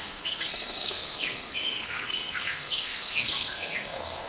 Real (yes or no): no